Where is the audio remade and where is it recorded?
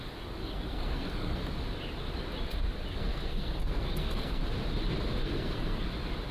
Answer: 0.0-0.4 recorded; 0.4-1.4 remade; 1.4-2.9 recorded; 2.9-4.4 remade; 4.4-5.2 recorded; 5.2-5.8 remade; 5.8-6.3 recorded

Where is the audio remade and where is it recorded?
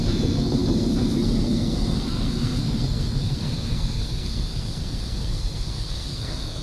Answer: 0.0-6.6 remade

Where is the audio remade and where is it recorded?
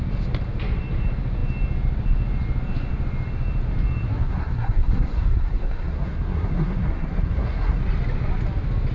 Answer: 0.0-4.1 recorded; 4.1-7.8 remade; 7.8-8.9 recorded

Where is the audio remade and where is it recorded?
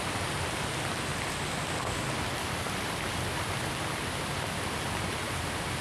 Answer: 0.0-5.8 recorded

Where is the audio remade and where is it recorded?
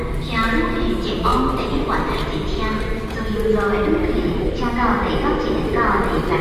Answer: 0.0-6.4 recorded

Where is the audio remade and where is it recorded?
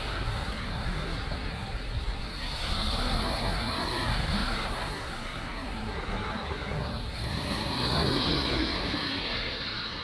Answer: 0.0-10.0 remade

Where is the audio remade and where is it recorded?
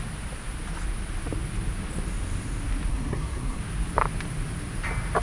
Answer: 0.0-2.9 recorded; 2.9-3.6 remade; 3.6-5.2 recorded